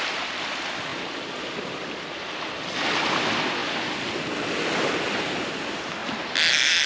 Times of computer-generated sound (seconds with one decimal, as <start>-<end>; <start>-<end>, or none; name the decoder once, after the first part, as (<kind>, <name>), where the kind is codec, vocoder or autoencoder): 0.0-3.6 (vocoder, BigVGAN v2); 4.5-6.0; 6.5-6.9